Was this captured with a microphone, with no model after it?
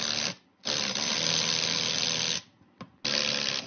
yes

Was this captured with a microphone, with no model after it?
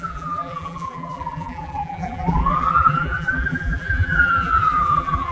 no